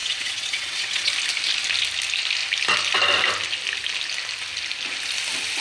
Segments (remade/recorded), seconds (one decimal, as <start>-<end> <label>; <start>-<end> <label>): 0.0-1.1 remade; 1.1-5.6 recorded